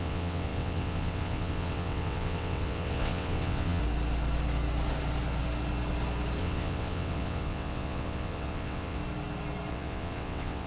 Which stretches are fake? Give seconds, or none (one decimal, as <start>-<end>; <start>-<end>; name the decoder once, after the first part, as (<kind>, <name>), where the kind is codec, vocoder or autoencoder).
0.0-3.8 (vocoder, WaveNeXt); 6.4-9.0; 9.7-10.7